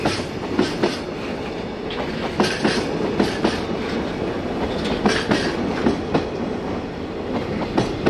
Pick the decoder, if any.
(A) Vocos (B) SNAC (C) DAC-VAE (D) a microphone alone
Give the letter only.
D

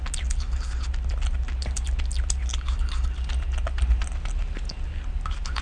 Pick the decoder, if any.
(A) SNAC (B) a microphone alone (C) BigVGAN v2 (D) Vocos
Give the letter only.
B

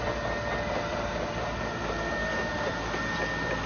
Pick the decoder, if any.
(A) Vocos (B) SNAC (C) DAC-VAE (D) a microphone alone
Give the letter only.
D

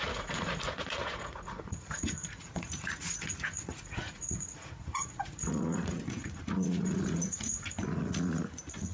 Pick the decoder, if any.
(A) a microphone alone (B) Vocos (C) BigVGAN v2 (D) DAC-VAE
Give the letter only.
B